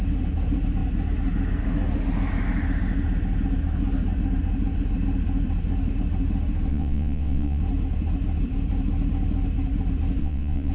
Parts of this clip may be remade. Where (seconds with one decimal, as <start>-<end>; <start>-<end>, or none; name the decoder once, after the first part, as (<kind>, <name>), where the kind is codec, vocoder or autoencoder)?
6.7-7.6 (vocoder, WaveNeXt); 10.2-10.7